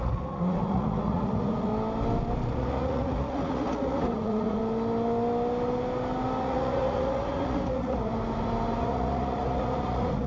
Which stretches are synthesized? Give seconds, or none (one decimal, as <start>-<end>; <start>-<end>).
0.0-1.7; 2.5-4.6; 6.4-8.1; 8.8-10.3

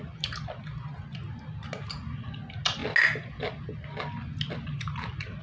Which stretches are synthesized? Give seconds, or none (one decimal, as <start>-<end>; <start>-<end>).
none

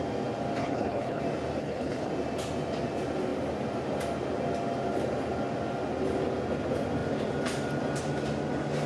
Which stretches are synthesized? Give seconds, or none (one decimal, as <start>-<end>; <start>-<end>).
0.6-1.2; 1.6-2.1

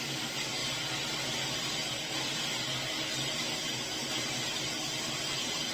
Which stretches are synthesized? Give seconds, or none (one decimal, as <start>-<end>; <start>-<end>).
0.0-0.6; 1.6-2.5; 4.1-5.7

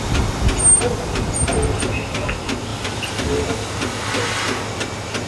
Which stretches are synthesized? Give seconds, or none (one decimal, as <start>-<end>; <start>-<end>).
2.7-3.5

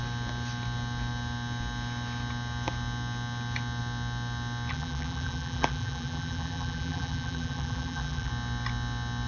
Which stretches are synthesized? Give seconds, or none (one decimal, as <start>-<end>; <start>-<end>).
4.7-8.3